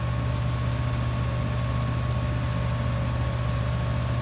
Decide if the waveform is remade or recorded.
recorded